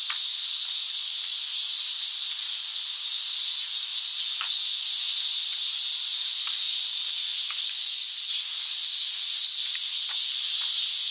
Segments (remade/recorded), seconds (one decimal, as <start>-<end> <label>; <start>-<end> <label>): 0.0-3.9 remade; 3.9-4.5 recorded; 4.5-11.1 remade